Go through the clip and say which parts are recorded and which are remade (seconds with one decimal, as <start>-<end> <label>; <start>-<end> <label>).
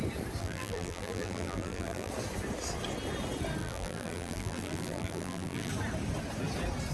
0.0-0.4 recorded; 0.4-2.1 remade; 2.1-3.6 recorded; 3.6-5.7 remade; 5.7-6.9 recorded